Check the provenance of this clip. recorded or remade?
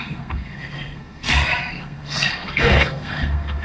remade